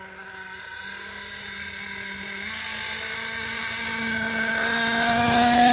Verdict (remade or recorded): recorded